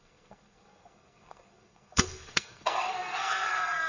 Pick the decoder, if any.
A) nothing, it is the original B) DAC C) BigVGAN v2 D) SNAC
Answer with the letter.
D